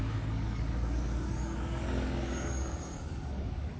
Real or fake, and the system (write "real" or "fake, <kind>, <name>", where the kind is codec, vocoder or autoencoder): fake, codec, DAC